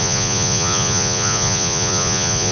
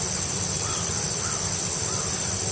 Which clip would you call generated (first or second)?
first